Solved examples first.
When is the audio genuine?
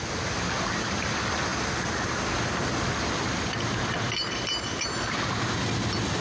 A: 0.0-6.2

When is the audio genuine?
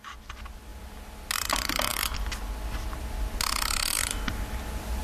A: 0.0-5.0